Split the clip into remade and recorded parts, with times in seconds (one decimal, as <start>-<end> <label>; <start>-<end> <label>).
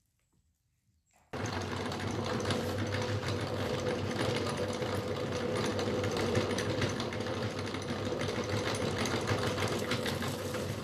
0.0-3.2 recorded; 3.2-4.5 remade; 4.5-5.7 recorded; 5.7-10.8 remade